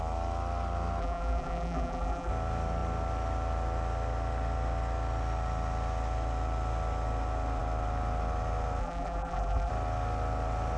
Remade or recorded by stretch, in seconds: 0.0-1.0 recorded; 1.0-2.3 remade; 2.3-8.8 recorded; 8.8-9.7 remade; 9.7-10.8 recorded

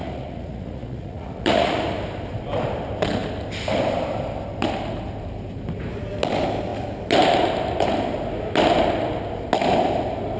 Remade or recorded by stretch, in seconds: 0.0-1.8 remade; 1.8-10.4 recorded

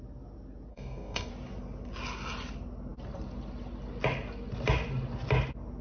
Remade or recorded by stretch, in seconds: 0.0-0.7 recorded; 0.7-1.3 remade; 1.3-5.8 recorded

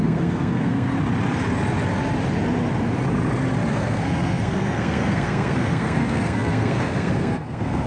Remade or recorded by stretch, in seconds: 0.0-0.9 remade; 0.9-3.7 recorded; 3.7-7.9 remade

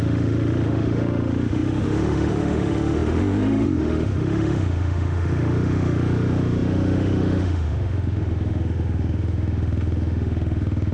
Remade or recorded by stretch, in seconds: 0.0-10.9 remade

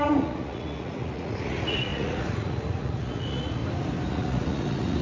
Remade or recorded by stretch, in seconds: 0.0-3.6 remade; 3.6-4.1 recorded; 4.1-5.0 remade